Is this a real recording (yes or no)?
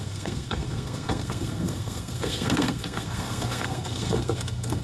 no